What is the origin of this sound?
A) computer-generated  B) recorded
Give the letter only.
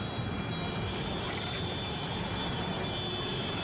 B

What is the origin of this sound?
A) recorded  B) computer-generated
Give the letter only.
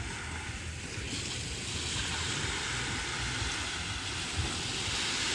A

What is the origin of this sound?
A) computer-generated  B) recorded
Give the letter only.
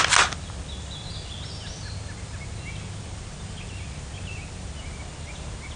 B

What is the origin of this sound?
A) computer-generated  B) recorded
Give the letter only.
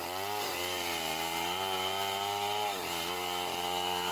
A